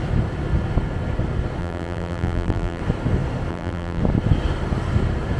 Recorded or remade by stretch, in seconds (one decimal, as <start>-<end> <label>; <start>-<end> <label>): 0.0-1.6 recorded; 1.6-2.8 remade; 2.8-3.5 recorded; 3.5-4.0 remade; 4.0-5.4 recorded